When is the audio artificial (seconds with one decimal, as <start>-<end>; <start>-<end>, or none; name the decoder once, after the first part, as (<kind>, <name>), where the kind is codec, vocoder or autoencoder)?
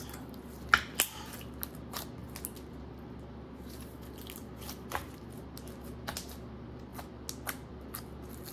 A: none